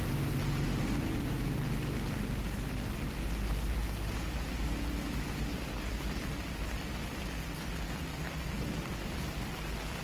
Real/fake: real